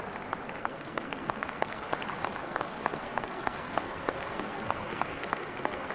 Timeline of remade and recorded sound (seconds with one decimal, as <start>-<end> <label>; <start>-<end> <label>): 0.0-0.6 recorded; 0.6-1.9 remade; 1.9-2.3 recorded; 2.3-5.9 remade